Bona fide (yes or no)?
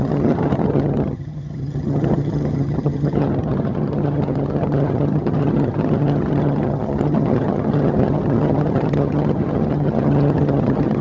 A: no